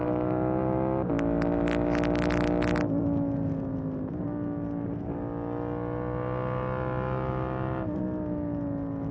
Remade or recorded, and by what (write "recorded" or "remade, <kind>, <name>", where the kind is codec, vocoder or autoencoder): recorded